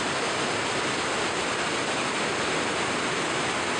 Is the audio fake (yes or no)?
no